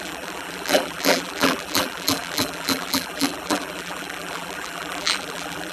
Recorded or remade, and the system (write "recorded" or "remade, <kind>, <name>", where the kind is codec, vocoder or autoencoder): remade, vocoder, BigVGAN v2